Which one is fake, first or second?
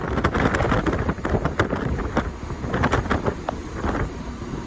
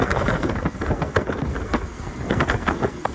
second